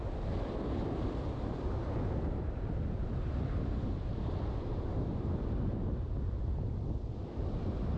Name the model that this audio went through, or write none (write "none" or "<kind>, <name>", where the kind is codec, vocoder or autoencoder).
none